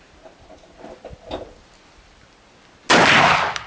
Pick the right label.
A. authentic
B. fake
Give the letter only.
A